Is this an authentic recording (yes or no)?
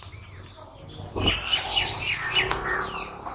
yes